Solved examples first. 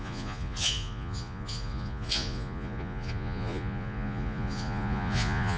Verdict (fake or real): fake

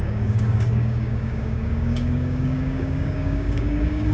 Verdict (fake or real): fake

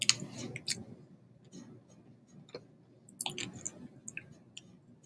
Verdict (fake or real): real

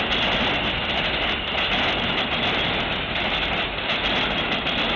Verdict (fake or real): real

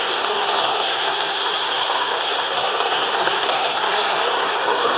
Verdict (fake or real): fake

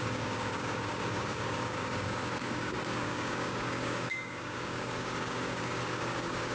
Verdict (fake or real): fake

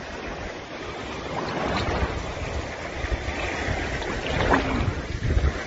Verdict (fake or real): real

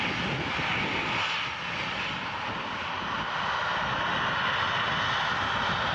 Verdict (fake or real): real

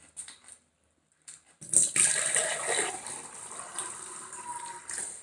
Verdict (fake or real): real